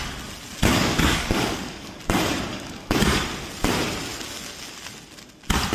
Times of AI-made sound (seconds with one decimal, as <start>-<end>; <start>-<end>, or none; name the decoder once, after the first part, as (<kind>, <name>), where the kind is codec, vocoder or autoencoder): 0.6-2.0 (codec, DAC); 2.5-3.2